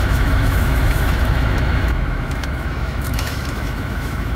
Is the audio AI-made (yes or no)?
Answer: yes